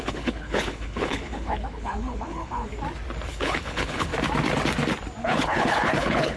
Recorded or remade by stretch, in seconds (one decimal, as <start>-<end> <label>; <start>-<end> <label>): 0.0-2.7 remade; 2.7-3.3 recorded; 3.3-4.1 remade; 4.1-5.2 recorded; 5.2-6.4 remade